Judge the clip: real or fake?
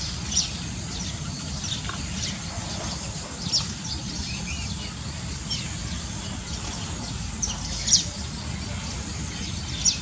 fake